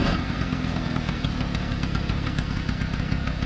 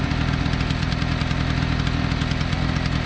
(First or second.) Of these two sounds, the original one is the second